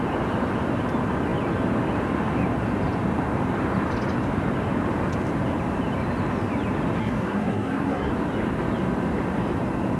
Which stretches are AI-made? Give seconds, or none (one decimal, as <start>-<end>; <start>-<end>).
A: 7.0-8.1

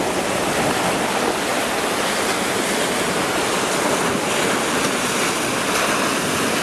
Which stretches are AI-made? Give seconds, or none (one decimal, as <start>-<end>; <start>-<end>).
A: none

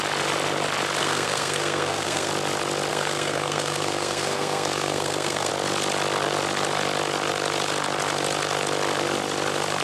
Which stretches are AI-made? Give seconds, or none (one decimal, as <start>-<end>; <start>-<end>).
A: 1.0-2.3; 2.9-5.5

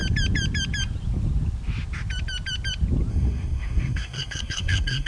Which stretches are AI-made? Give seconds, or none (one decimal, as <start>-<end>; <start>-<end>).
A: 3.1-5.1

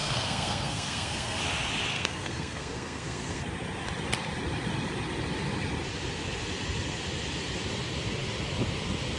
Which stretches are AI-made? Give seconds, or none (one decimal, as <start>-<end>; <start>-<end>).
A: 0.0-1.4; 1.9-3.4

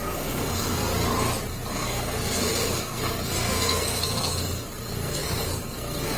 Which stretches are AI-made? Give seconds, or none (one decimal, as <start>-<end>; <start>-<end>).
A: 0.0-0.9; 1.7-6.2